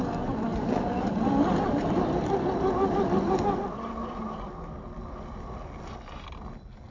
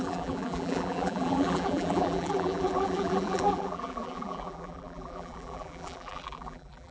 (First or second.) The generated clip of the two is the second